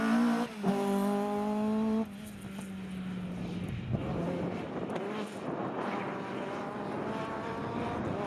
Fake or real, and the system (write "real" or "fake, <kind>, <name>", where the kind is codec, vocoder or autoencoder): real